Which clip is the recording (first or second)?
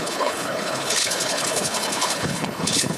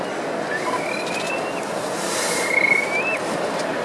second